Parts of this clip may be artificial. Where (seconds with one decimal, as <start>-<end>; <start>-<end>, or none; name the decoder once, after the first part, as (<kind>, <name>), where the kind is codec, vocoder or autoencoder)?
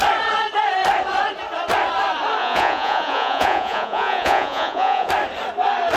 2.4-5.1 (vocoder, Vocos)